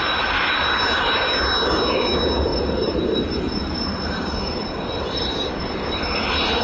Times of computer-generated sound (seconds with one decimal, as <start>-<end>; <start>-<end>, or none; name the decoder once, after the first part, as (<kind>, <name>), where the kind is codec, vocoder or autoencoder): 2.5-6.6 (vocoder, BigVGAN v2)